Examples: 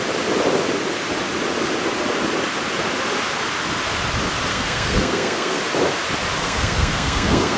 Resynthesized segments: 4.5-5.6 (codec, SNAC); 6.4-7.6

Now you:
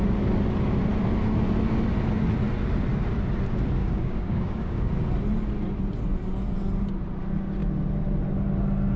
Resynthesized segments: 3.8-4.9 (codec, DAC)

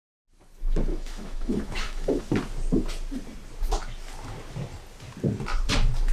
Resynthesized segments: 0.9-2.2 (autoencoder, DAC-VAE)

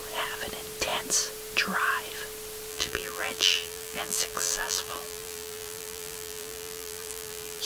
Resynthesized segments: 2.7-7.6 (vocoder, BigVGAN v2)